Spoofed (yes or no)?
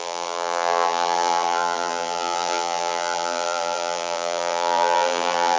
yes